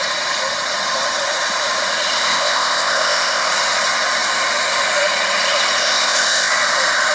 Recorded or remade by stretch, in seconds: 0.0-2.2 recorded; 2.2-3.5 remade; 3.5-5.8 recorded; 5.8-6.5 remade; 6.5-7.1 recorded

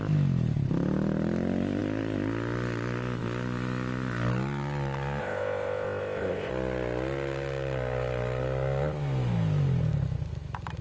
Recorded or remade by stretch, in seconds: 0.0-5.2 recorded; 5.2-6.5 remade; 6.5-10.8 recorded

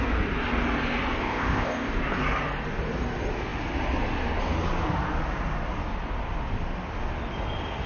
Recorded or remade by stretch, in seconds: 0.0-1.2 recorded; 1.2-1.9 remade; 1.9-7.9 recorded

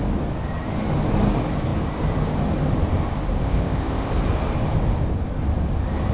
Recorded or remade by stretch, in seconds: 0.0-3.4 recorded; 3.4-4.1 remade; 4.1-6.1 recorded

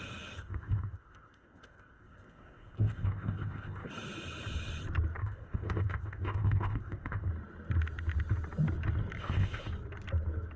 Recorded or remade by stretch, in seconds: 0.0-0.4 recorded; 0.4-3.9 remade; 3.9-5.2 recorded; 5.2-7.3 remade; 7.3-9.2 recorded; 9.2-9.7 remade; 9.7-10.6 recorded

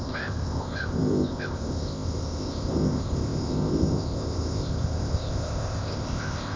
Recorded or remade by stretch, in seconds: 0.0-6.6 remade

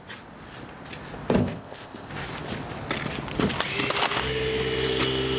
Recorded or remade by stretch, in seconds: 0.0-1.4 recorded; 1.4-2.1 remade; 2.1-5.4 recorded

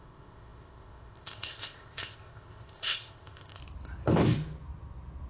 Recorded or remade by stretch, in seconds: 0.0-3.6 remade; 3.6-5.3 recorded